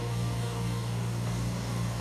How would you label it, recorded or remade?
remade